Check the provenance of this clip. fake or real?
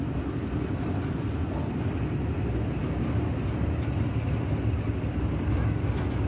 real